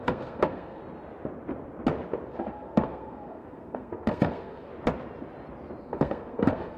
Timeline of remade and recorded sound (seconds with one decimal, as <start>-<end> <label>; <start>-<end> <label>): 0.0-0.8 remade; 0.8-2.3 recorded; 2.3-4.7 remade; 4.7-5.8 recorded; 5.8-6.8 remade